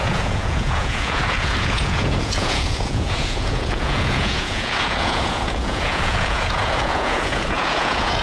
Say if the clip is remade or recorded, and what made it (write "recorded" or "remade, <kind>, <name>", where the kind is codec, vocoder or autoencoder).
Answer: remade, vocoder, Vocos